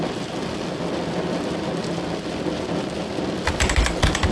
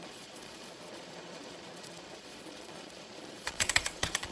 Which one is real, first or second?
first